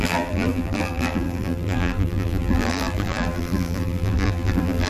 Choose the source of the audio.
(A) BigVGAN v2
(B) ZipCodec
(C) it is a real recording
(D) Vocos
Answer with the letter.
A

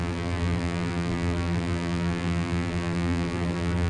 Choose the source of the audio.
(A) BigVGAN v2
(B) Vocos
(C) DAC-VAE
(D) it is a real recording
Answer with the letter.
A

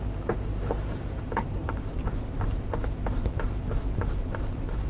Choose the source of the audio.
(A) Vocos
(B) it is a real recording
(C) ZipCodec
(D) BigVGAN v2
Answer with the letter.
D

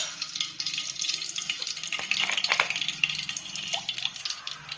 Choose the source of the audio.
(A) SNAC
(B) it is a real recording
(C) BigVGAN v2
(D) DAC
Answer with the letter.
B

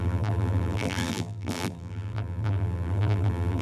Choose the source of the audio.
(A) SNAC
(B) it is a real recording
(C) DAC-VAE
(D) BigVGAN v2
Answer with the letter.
D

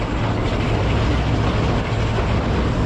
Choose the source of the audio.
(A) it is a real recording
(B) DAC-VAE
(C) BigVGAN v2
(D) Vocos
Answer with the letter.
A